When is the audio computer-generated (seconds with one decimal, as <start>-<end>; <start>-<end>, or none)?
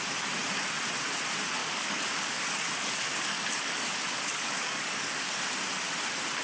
1.6-5.4